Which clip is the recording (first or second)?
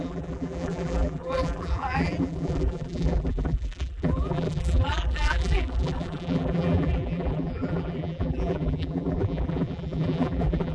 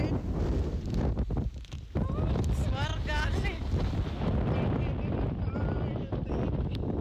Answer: second